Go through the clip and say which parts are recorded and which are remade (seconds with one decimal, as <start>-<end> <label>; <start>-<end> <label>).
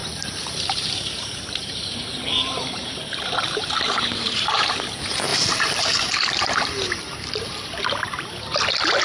0.0-4.7 remade; 4.7-5.3 recorded; 5.3-6.5 remade; 6.5-9.0 recorded